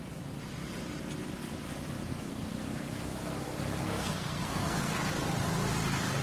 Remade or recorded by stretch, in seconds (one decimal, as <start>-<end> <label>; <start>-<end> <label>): 0.0-2.1 recorded; 2.1-5.1 remade; 5.1-6.2 recorded